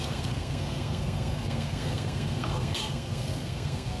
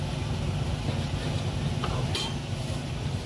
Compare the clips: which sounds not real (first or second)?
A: first